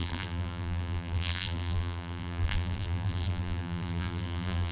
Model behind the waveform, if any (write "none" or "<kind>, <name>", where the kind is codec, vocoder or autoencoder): vocoder, BigVGAN v2